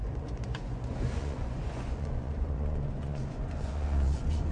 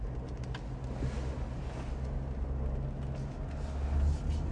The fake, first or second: first